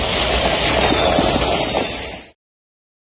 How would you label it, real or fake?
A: real